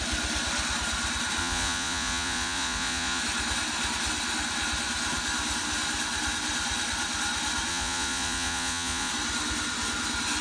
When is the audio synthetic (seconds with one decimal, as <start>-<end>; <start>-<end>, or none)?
1.4-3.2; 7.7-9.1